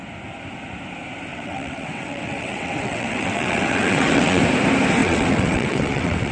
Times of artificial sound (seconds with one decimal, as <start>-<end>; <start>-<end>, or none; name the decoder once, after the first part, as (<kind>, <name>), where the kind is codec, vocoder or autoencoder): 1.3-4.4 (vocoder, WaveNeXt); 5.0-6.3